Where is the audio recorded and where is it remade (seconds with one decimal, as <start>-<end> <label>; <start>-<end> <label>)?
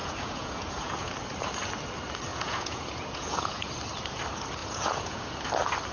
0.0-1.1 remade; 1.1-2.3 recorded; 2.3-3.7 remade; 3.7-4.6 recorded; 4.6-5.4 remade; 5.4-5.9 recorded